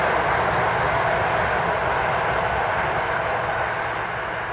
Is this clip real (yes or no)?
yes